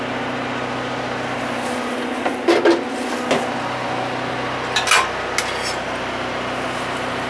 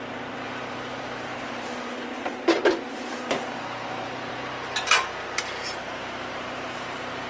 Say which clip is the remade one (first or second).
second